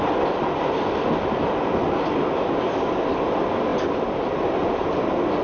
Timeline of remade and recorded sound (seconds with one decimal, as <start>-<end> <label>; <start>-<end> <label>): 0.0-5.4 recorded